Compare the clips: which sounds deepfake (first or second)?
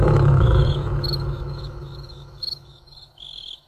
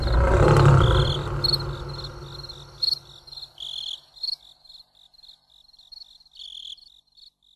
first